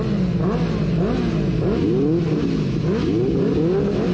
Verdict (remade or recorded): recorded